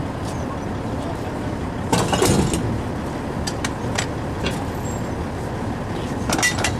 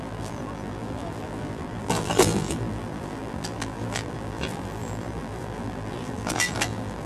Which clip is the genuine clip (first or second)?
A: first